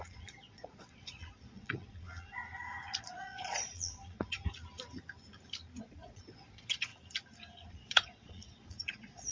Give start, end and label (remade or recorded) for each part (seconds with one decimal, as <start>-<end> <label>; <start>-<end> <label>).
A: 0.0-2.4 remade; 2.4-3.0 recorded; 3.0-4.4 remade; 4.4-5.8 recorded; 5.8-6.9 remade; 6.9-7.7 recorded; 7.7-9.3 remade